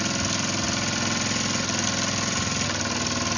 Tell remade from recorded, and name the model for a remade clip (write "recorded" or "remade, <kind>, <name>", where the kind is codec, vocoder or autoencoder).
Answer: recorded